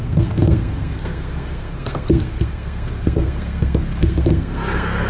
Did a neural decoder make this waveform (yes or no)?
yes